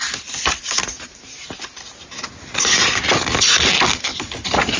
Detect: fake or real real